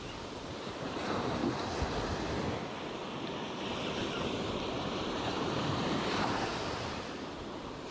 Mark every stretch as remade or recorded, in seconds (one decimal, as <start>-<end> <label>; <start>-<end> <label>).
0.0-1.4 remade; 1.4-4.7 recorded; 4.7-7.9 remade

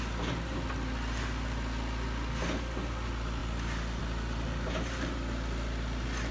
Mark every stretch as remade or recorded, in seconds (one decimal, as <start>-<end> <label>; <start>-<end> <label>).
0.0-6.3 recorded

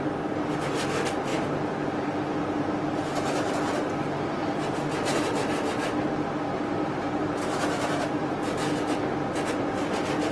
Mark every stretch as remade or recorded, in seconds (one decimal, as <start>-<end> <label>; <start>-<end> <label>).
0.0-6.7 recorded; 6.7-8.4 remade; 8.4-10.3 recorded

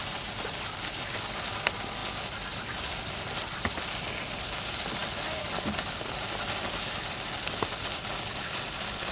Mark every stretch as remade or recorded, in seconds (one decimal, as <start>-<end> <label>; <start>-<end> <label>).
0.0-9.1 recorded

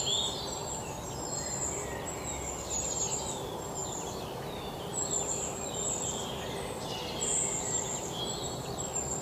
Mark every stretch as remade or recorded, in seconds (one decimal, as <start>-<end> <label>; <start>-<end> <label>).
0.0-9.2 recorded

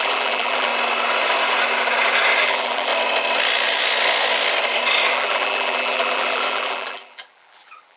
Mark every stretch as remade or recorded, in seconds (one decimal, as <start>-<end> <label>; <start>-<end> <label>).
0.0-0.7 remade; 0.7-2.4 recorded; 2.4-2.9 remade; 2.9-5.1 recorded; 5.1-8.0 remade

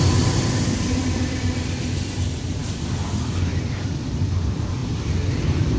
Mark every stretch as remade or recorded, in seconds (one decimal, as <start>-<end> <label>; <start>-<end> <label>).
0.0-5.8 remade